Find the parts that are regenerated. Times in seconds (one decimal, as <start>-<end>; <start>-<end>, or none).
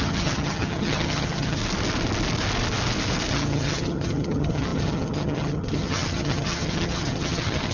0.0-1.6; 3.3-7.7